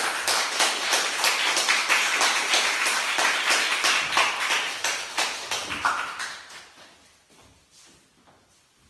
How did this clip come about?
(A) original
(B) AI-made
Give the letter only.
A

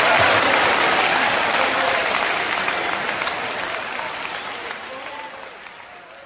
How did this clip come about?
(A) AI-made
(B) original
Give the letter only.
B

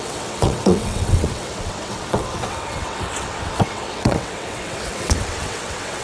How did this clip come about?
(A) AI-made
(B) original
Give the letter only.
A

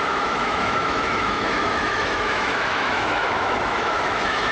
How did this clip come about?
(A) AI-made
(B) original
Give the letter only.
A